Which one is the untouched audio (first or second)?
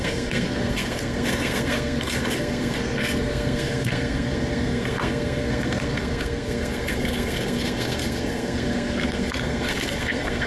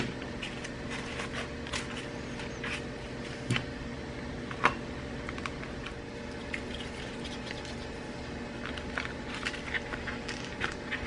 second